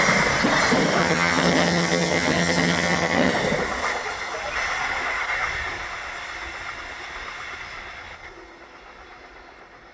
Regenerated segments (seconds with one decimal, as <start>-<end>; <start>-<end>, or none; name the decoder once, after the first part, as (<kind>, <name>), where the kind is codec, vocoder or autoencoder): 1.0-3.3 (vocoder, HiFi-GAN)